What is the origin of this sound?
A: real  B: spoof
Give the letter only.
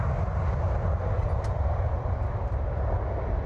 A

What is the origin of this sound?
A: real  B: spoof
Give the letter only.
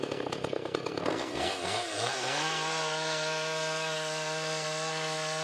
B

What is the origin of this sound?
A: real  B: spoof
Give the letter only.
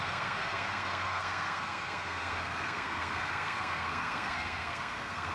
B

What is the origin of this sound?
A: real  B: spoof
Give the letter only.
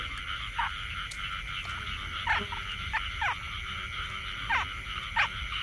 A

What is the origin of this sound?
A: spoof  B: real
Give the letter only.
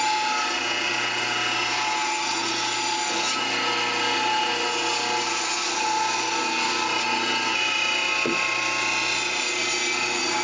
B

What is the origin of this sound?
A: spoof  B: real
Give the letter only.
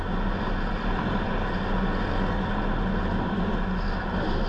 B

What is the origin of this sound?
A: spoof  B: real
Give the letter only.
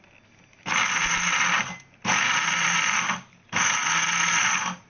B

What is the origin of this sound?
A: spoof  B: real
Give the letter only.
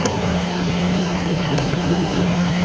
A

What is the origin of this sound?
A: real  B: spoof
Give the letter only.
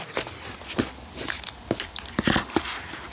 A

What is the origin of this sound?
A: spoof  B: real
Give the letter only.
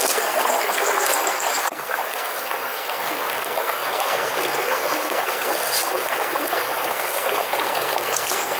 A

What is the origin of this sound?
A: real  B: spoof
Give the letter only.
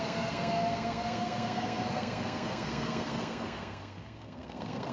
B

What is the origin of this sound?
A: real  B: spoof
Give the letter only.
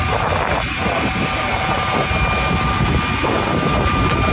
A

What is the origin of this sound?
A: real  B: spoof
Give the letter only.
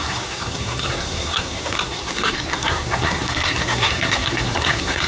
B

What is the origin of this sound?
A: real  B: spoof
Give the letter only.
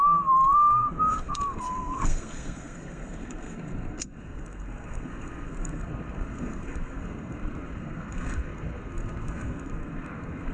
B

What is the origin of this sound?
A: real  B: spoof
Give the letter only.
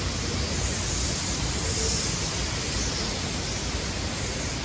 A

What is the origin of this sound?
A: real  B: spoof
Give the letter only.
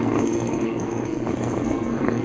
B